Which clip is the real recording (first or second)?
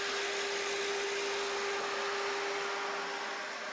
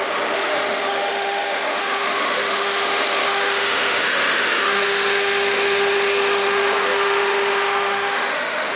first